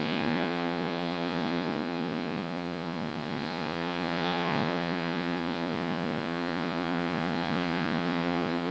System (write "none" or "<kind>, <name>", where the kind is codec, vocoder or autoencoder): vocoder, Vocos